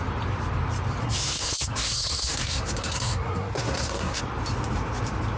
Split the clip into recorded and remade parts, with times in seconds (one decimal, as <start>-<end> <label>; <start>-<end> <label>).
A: 0.0-1.0 recorded; 1.0-4.2 remade; 4.2-5.4 recorded